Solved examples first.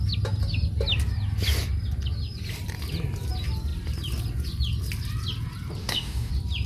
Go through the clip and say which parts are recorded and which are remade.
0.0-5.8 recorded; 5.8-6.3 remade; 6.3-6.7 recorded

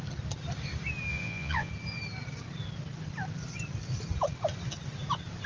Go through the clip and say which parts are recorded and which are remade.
0.0-1.1 recorded; 1.1-1.7 remade; 1.7-5.5 recorded

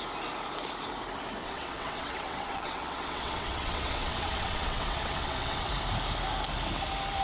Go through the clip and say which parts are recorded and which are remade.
0.0-1.4 recorded; 1.4-5.7 remade; 5.7-7.2 recorded